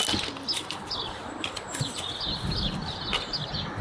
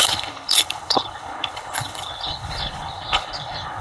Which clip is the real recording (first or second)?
first